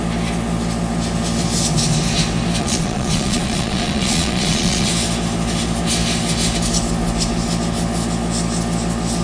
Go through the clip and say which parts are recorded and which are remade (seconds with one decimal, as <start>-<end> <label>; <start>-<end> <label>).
0.0-2.6 recorded; 2.6-4.9 remade; 4.9-9.2 recorded